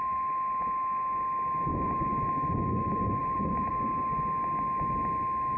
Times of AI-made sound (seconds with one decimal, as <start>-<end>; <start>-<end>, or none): 1.7-2.3; 3.2-3.7